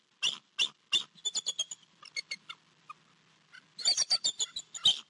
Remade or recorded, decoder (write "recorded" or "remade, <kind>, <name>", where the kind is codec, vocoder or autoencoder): recorded